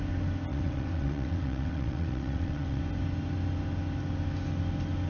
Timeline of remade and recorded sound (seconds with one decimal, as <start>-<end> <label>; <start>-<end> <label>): 0.0-0.5 recorded; 0.5-2.8 remade; 2.8-5.1 recorded